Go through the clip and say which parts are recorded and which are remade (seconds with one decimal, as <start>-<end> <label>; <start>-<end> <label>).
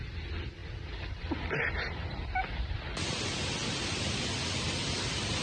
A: 0.0-5.4 recorded